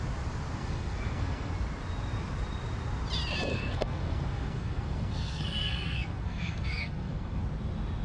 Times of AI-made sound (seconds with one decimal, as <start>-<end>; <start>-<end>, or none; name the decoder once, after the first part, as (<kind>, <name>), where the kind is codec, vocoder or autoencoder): 0.6-1.5 (codec, SNAC); 3.5-7.4